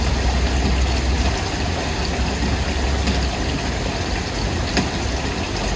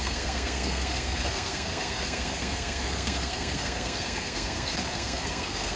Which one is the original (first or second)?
first